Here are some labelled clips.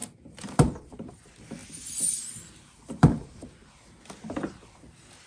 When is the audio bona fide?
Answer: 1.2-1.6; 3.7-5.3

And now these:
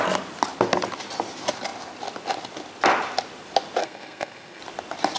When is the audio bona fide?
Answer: 0.0-3.8; 4.6-5.2

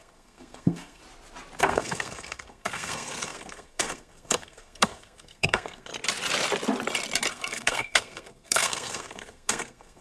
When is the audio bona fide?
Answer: 1.0-1.6; 5.9-7.3

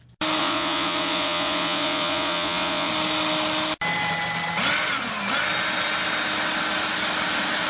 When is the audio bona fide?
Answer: 0.0-0.4; 2.9-7.7

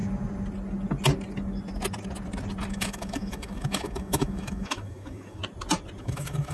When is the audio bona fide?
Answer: 0.0-2.7; 5.4-6.0

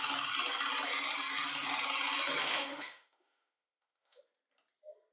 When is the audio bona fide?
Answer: 0.0-2.4; 4.2-5.1